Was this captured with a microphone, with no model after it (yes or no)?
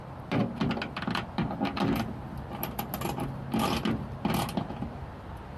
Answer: yes